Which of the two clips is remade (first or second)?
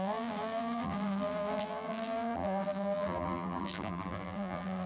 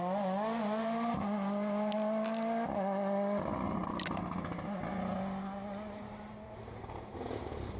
first